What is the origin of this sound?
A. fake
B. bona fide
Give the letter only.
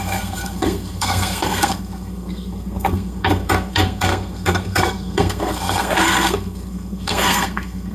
A